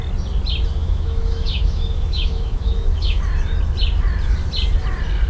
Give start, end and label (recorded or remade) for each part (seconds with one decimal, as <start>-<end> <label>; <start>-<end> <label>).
0.0-0.8 recorded; 0.8-3.2 remade; 3.2-5.3 recorded